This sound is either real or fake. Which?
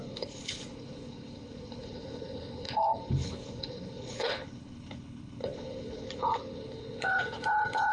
fake